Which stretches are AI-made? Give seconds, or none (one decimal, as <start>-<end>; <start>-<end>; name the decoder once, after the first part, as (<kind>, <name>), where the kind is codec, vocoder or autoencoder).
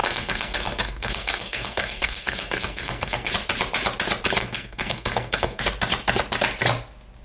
0.0-3.3 (codec, SNAC); 4.4-5.6